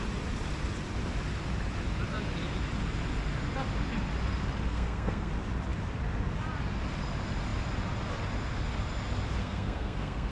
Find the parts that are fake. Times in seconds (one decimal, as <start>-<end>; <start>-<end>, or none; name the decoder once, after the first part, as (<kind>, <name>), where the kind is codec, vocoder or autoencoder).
4.7-5.3 (codec, SNAC); 9.4-10.3